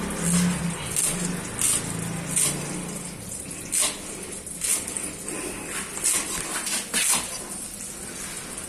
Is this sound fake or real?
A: real